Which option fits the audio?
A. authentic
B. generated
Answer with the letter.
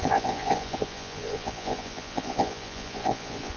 B